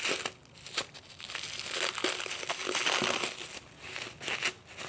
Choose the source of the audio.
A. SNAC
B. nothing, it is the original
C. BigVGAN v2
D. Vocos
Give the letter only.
B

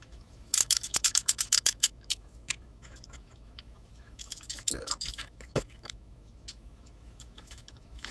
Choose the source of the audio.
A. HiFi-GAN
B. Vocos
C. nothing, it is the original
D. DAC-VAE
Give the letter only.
D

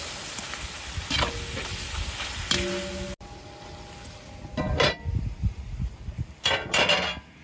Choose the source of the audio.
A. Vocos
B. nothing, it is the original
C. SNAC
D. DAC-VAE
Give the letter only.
B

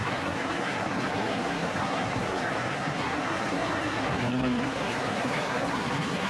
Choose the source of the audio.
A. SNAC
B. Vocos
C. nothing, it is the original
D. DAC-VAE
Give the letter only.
A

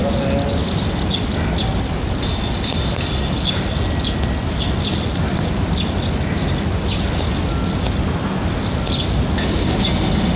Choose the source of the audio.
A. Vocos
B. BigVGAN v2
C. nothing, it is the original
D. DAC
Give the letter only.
C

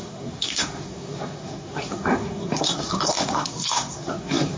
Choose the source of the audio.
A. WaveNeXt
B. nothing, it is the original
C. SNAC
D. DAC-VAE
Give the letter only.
C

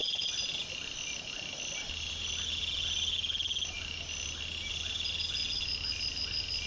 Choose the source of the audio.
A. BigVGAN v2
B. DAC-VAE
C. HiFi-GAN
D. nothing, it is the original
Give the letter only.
D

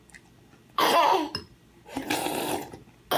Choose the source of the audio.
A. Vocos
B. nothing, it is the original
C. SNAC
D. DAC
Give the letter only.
B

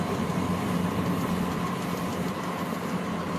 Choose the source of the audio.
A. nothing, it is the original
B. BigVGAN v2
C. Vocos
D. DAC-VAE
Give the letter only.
A